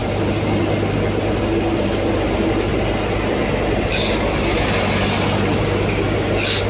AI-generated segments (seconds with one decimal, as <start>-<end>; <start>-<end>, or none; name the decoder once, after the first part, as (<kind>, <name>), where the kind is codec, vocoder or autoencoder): none